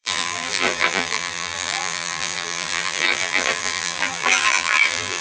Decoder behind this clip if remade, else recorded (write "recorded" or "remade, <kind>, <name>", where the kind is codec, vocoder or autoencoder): remade, vocoder, BigVGAN v2